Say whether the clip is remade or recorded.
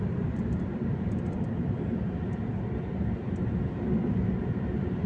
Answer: recorded